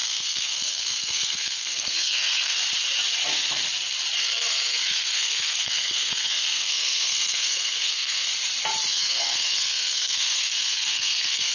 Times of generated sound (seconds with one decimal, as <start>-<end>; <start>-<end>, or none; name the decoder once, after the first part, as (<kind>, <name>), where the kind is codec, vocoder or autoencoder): 0.0-2.6 (codec, SNAC); 4.2-8.3; 8.9-11.5